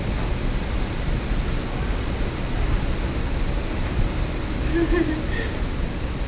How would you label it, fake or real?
real